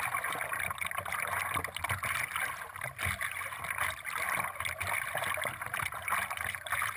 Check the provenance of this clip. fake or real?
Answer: real